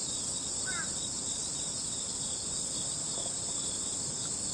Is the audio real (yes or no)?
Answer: yes